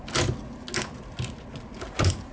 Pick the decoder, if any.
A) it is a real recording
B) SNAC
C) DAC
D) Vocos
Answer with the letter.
A